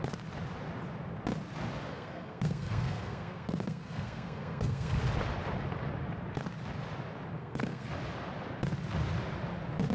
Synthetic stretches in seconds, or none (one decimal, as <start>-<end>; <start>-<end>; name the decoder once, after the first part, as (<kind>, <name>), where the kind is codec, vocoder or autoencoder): 1.9-5.0 (codec, SNAC); 7.4-7.9